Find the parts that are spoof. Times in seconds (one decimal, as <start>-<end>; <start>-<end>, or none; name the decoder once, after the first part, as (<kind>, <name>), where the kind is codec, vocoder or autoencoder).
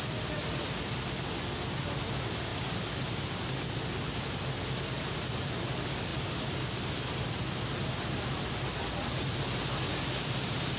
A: none